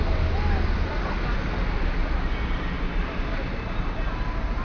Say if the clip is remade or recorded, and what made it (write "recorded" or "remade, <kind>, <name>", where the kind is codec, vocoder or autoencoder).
recorded